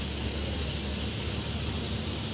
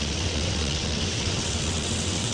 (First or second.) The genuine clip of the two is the first